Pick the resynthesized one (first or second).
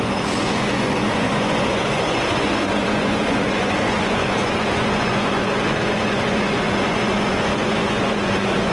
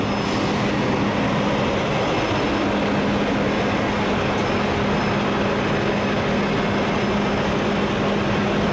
first